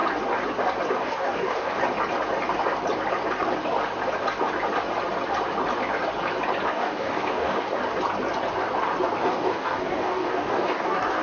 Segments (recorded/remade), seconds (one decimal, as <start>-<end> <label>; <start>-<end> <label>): 0.0-0.9 recorded; 0.9-1.8 remade; 1.8-6.7 recorded; 6.7-7.8 remade; 7.8-9.2 recorded; 9.2-11.2 remade